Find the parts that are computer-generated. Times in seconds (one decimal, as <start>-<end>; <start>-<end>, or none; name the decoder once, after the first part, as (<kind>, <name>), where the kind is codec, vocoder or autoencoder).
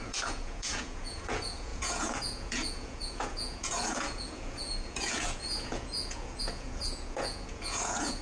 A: 0.0-8.2 (vocoder, Vocos)